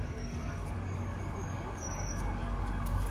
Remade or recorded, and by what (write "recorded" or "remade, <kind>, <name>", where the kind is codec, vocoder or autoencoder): remade, codec, DAC